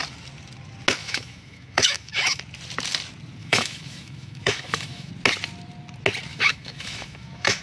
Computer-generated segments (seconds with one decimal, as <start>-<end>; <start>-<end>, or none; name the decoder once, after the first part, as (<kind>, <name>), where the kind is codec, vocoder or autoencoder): 1.0-2.4 (autoencoder, DAC-VAE); 3.4-5.1; 6.3-7.6